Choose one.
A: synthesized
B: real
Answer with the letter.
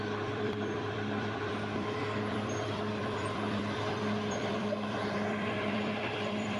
A